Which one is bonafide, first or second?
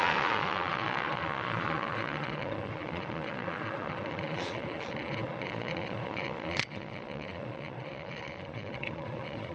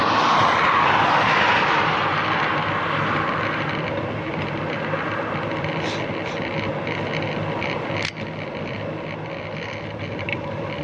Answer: second